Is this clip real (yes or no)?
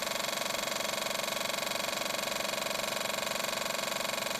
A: yes